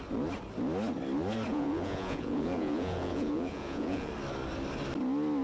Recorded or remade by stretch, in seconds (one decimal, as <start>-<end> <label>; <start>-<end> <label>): 0.0-1.5 recorded; 1.5-4.1 remade; 4.1-5.4 recorded